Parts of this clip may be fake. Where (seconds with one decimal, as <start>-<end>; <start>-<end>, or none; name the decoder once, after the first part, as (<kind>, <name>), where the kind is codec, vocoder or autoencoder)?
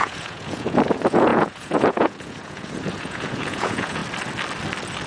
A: 0.0-4.0 (vocoder, Vocos)